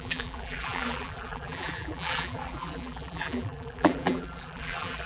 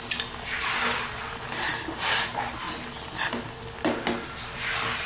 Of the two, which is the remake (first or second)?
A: first